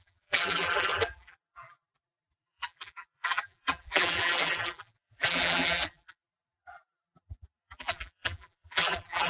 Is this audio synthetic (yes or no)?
yes